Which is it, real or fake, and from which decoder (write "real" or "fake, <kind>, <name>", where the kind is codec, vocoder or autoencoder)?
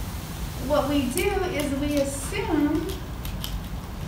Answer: real